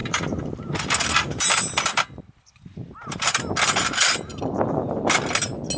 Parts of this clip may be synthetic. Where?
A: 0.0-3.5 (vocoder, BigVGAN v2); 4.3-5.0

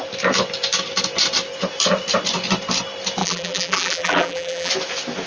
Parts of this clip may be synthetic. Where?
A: 3.2-4.7 (vocoder, BigVGAN v2)